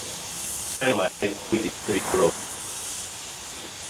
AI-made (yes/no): no